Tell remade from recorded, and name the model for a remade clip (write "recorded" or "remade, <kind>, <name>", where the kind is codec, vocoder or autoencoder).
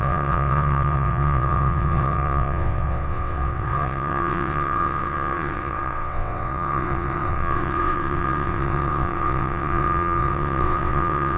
remade, vocoder, WaveNeXt